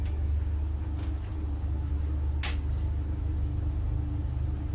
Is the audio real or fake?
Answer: real